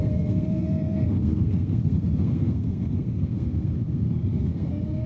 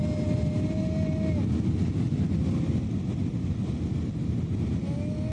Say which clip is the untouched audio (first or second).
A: second